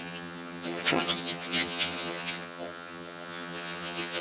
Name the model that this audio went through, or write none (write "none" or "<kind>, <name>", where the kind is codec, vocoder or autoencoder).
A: vocoder, HiFi-GAN